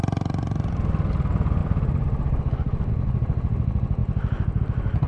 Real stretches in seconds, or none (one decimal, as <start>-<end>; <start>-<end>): 0.0-1.6; 2.9-5.1